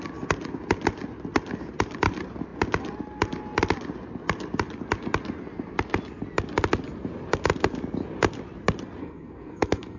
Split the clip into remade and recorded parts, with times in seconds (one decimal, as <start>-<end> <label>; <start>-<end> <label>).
0.0-9.0 recorded; 9.0-10.0 remade